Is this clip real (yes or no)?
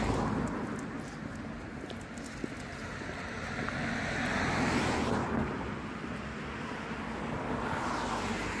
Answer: yes